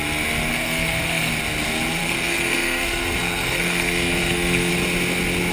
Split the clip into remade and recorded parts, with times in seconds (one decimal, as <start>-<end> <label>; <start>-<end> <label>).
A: 0.0-0.5 recorded; 0.5-1.3 remade; 1.3-2.0 recorded; 2.0-4.7 remade; 4.7-5.5 recorded